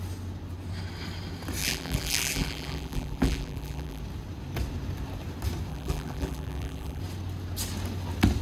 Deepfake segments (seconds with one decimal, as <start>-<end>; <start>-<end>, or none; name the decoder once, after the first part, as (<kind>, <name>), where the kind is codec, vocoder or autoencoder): 1.6-4.0 (vocoder, BigVGAN v2); 5.7-7.0